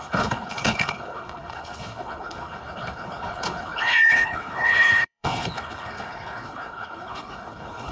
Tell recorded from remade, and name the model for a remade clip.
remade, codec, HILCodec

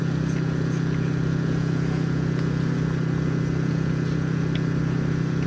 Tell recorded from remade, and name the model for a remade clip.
recorded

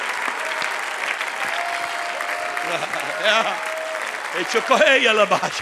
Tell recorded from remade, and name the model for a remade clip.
recorded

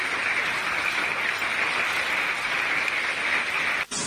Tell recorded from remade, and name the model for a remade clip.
recorded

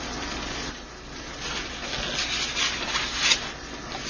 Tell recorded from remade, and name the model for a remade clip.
recorded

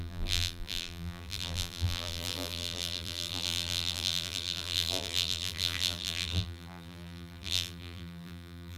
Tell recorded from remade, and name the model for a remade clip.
remade, vocoder, BigVGAN v2